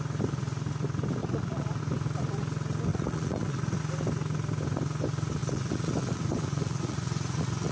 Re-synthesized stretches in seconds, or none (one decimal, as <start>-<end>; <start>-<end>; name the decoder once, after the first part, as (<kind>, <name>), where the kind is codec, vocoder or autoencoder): 1.2-1.8 (vocoder, Vocos); 2.9-3.8; 5.4-7.7